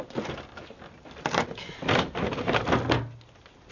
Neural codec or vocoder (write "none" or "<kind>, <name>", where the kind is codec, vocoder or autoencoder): none